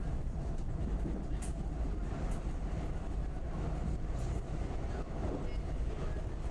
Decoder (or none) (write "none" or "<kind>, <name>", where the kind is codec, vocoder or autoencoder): none